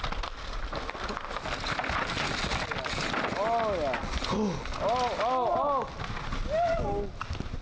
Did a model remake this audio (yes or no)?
no